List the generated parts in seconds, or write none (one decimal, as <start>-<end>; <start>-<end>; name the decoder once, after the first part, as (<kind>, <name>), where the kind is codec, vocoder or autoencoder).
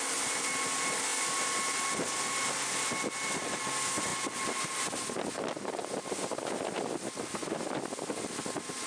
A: none